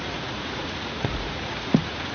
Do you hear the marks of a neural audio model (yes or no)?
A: yes